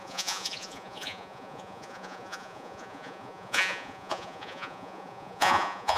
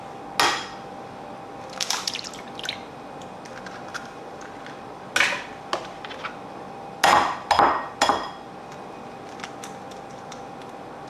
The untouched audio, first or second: second